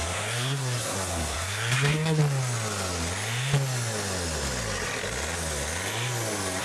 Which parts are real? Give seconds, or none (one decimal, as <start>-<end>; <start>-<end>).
2.2-6.6